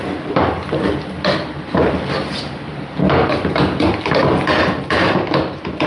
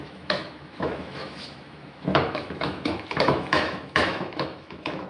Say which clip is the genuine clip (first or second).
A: first